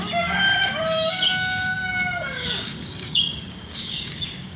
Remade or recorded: remade